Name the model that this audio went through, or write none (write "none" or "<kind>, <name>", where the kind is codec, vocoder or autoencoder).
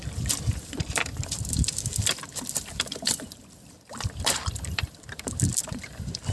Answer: vocoder, BigVGAN v2